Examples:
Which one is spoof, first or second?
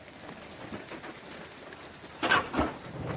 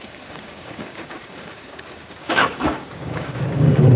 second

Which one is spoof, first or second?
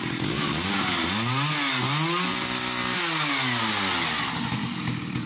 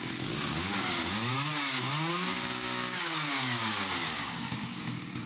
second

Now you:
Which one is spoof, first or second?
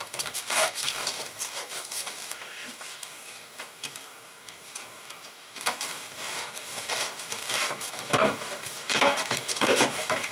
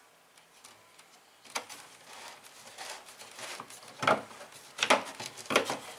first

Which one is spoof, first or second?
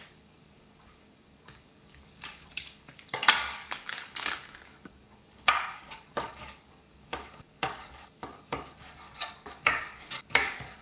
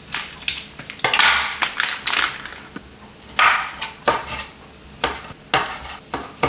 first